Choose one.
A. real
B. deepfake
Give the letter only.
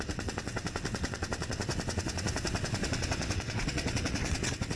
B